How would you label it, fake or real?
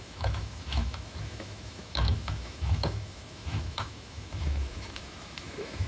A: fake